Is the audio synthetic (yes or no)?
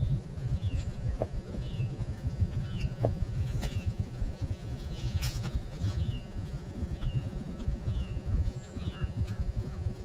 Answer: yes